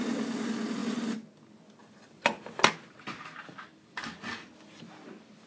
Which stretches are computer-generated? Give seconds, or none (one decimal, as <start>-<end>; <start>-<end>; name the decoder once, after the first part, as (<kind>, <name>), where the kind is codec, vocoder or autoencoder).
none